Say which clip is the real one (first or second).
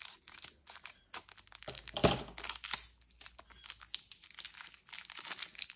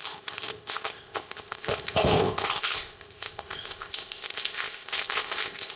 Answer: first